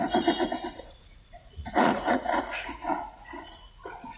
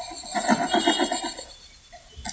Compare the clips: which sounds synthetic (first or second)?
first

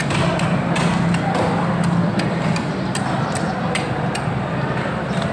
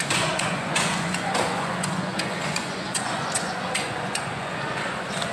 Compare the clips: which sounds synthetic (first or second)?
second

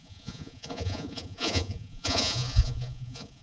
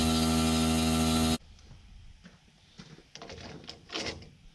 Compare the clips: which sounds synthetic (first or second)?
first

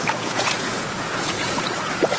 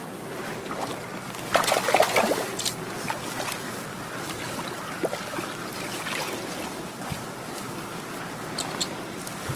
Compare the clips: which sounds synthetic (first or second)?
first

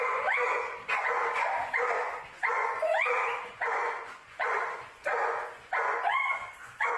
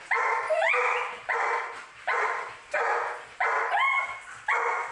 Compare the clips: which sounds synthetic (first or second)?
first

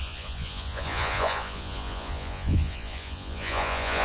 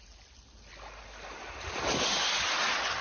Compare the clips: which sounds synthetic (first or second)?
first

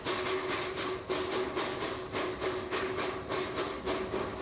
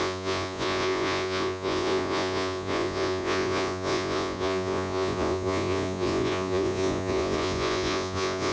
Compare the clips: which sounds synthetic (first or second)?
second